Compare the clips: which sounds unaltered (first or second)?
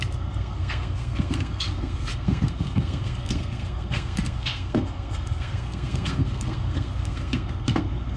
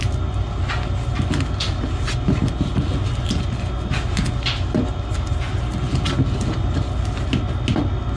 second